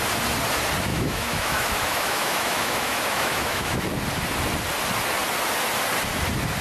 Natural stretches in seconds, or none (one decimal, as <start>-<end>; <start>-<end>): 0.0-0.9; 3.8-6.6